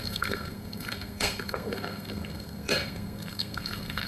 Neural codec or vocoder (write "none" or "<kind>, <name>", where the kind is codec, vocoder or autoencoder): codec, SNAC